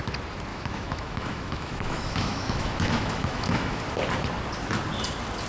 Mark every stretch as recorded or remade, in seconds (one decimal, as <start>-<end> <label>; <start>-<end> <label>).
0.0-0.5 recorded; 0.5-3.8 remade; 3.8-5.5 recorded